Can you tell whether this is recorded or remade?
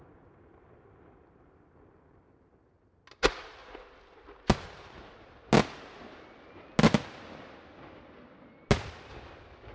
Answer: recorded